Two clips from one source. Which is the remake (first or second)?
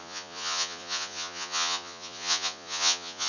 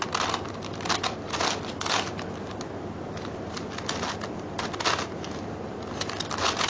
first